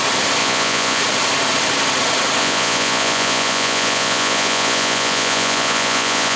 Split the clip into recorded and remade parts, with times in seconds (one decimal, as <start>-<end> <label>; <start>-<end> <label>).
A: 0.0-0.4 recorded; 0.4-1.0 remade; 1.0-2.4 recorded; 2.4-6.4 remade